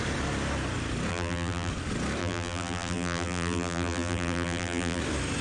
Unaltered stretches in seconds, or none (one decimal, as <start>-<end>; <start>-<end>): 0.0-1.1; 1.7-2.2; 5.0-5.4